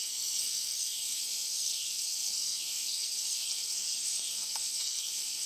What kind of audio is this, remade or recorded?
remade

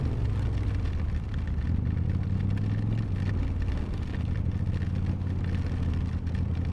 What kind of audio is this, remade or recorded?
recorded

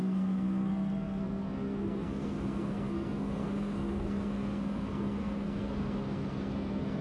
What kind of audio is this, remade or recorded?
remade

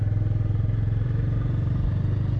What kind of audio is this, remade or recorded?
remade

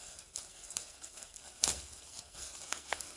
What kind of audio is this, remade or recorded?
remade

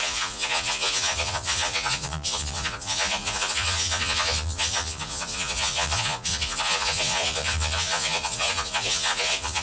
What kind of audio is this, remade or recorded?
remade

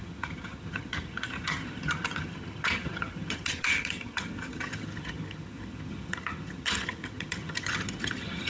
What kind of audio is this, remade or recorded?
remade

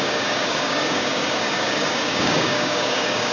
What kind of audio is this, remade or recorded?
remade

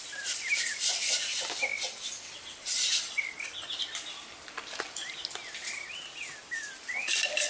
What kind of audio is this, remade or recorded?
recorded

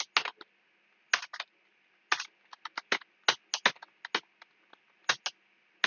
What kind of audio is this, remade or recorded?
recorded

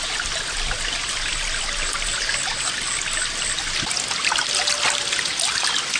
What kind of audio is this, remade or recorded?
recorded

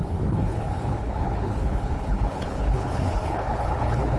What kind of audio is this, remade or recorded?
remade